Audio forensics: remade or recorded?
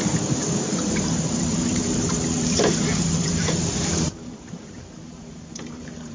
remade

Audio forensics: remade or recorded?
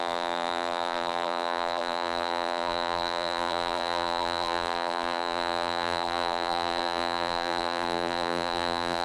remade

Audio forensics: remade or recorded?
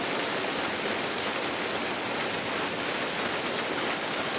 recorded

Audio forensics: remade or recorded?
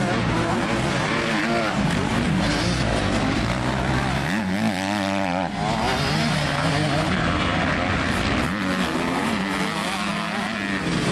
recorded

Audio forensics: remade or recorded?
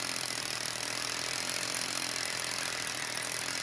remade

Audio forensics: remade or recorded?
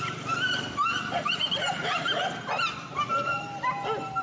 recorded